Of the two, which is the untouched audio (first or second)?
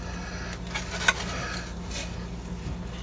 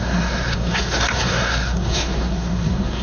first